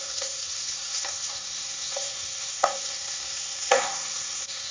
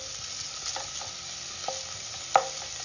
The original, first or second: second